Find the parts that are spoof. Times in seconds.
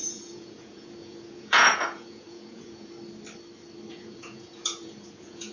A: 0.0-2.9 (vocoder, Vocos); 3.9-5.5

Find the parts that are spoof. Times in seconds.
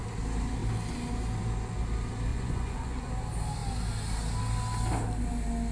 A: 2.3-3.1 (vocoder, Vocos)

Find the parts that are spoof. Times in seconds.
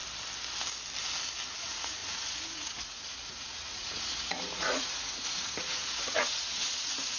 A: 1.6-7.2 (vocoder, Vocos)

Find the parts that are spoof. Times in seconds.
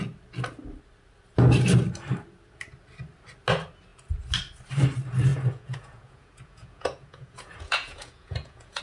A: 5.3-8.8 (vocoder, Vocos)